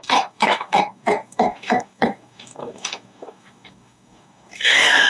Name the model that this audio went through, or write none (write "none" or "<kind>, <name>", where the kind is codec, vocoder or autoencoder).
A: codec, DAC